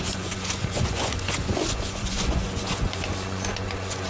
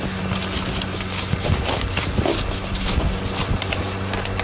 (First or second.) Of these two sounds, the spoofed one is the first